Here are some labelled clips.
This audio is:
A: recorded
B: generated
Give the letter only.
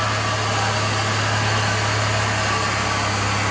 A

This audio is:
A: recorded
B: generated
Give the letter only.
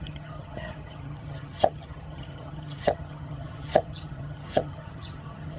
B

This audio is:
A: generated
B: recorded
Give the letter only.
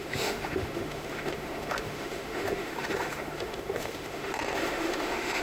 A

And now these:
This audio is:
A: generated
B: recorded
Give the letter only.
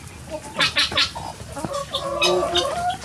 B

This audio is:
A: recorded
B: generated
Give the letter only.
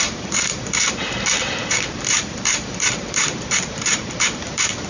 B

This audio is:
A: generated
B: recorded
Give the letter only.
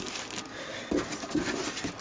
B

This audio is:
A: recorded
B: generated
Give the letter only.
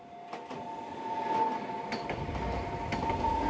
A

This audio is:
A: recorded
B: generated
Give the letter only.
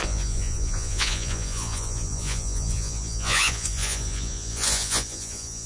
B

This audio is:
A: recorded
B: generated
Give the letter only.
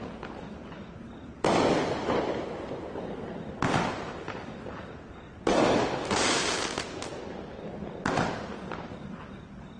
A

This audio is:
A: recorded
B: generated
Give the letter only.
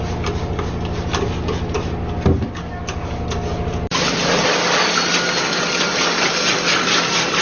A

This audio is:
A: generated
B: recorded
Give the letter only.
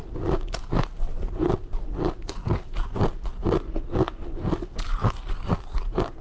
B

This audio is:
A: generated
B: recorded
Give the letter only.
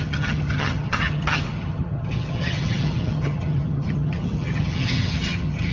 A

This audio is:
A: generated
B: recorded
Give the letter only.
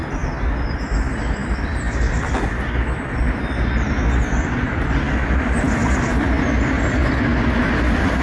B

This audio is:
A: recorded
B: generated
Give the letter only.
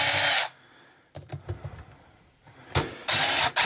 A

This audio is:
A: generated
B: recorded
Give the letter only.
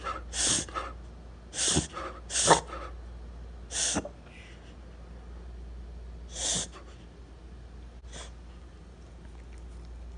B